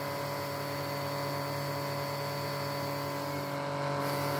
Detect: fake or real real